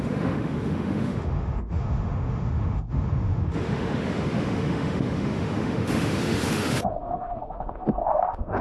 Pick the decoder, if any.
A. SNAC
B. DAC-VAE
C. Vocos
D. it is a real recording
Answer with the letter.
B